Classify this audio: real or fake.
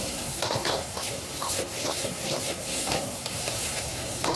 fake